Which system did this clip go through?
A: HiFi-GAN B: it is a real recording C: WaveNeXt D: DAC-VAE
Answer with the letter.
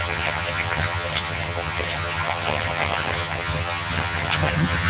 A